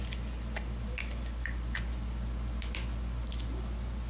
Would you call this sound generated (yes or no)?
no